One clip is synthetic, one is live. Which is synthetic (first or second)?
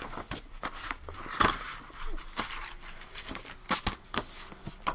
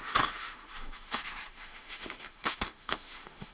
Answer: second